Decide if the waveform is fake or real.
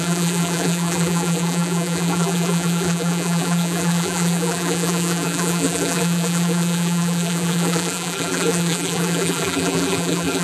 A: fake